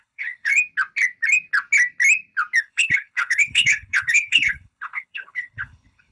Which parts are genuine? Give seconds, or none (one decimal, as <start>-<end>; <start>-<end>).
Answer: 0.5-2.6